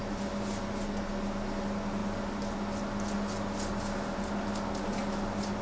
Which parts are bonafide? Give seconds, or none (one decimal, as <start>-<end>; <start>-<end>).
0.0-5.6